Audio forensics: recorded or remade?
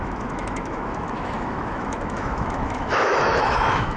remade